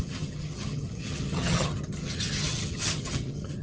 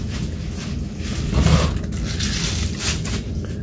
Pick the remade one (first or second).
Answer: first